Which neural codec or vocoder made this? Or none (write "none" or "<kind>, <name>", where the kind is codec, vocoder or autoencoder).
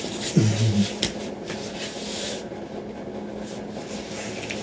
none